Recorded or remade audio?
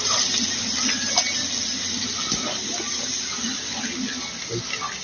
recorded